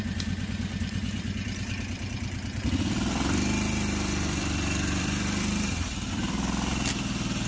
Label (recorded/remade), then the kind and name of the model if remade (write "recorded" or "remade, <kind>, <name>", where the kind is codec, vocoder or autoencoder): remade, vocoder, BigVGAN v2